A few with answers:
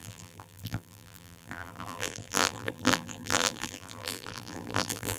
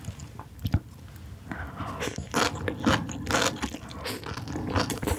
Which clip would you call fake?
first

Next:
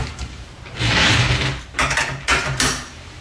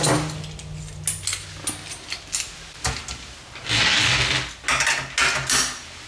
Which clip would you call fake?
first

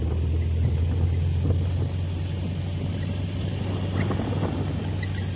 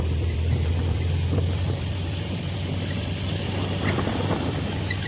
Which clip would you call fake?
second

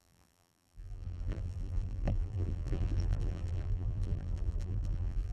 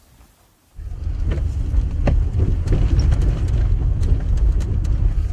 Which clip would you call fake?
first